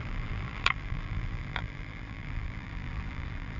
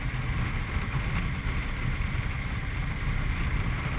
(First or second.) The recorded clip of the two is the second